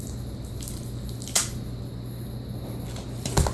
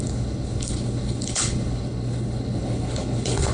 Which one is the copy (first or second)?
second